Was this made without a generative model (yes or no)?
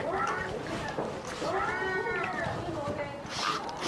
yes